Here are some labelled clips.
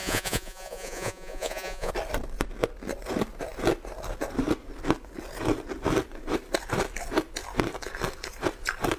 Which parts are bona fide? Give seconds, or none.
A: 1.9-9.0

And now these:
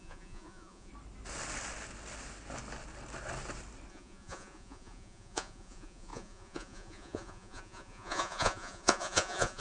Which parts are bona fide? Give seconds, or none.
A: 0.9-3.9

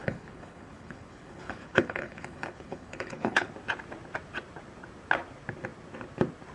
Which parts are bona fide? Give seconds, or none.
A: 3.5-6.5

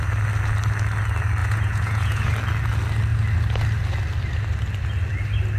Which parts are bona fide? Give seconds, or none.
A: 0.0-1.4; 2.3-5.6

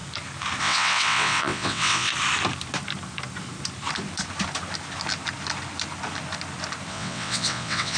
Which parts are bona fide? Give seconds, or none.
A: 0.0-0.6; 2.1-6.9